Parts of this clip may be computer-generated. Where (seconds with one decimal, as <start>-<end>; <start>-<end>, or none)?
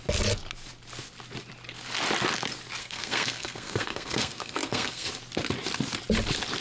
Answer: 2.8-5.1